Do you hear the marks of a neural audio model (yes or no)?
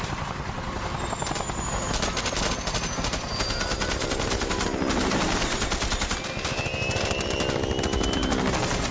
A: no